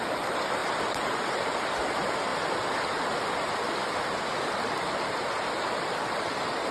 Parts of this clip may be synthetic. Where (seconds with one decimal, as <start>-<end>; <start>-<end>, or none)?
0.0-2.3; 5.6-6.7